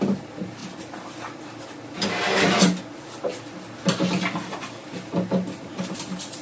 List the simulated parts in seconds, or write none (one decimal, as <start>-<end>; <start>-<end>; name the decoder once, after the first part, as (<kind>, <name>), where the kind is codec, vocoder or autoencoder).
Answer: none